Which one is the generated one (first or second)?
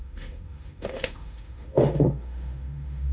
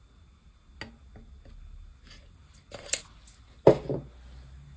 first